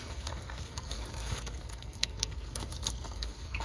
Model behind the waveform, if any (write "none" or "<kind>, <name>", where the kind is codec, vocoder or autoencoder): codec, SNAC